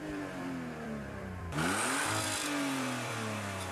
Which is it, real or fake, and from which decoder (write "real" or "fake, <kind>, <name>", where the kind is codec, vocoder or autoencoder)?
fake, vocoder, BigVGAN v2